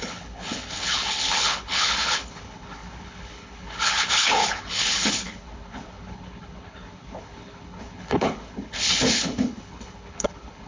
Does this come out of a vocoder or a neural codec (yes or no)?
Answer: yes